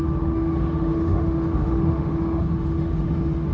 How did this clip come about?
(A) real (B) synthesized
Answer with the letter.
B